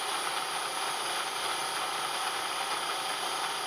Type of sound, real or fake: real